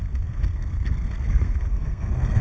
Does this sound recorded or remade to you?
remade